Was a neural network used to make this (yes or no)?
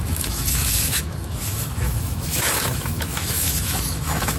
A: yes